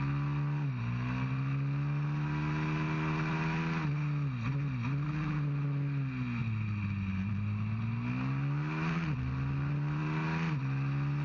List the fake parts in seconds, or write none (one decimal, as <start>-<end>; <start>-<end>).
none